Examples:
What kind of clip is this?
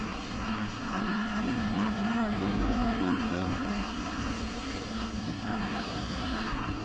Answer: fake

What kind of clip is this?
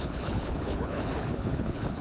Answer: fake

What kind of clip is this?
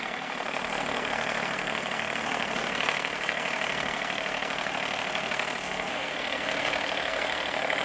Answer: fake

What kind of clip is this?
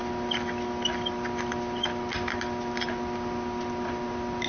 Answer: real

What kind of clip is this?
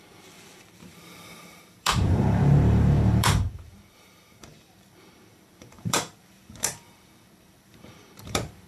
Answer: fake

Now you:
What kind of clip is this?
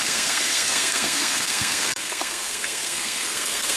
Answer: fake